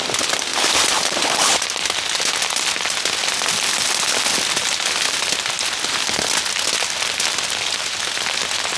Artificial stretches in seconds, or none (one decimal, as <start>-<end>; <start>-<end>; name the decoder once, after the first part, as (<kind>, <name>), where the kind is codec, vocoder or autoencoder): none